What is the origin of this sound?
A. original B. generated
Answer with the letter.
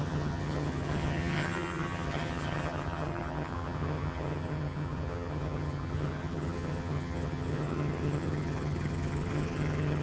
B